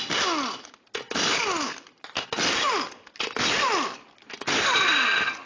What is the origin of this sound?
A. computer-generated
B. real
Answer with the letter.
B